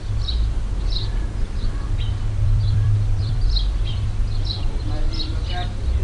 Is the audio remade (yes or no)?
yes